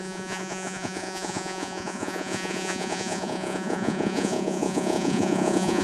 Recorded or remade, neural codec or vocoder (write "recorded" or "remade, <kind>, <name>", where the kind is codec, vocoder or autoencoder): remade, vocoder, Vocos